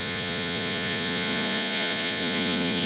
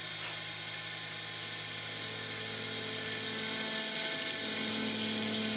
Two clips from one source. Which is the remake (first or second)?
first